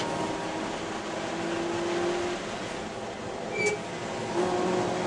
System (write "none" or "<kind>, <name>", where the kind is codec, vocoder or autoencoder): none